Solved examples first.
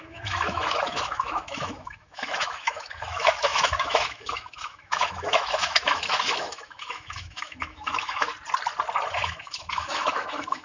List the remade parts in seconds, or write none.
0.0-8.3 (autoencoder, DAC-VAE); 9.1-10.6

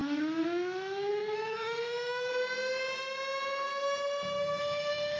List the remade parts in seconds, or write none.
0.0-2.3 (autoencoder, DAC-VAE); 4.6-5.2

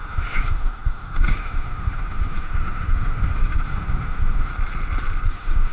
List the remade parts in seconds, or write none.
0.0-4.5 (autoencoder, DAC-VAE); 5.3-5.7

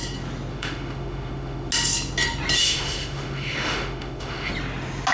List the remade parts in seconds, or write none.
0.5-1.7 (autoencoder, DAC-VAE); 2.6-4.5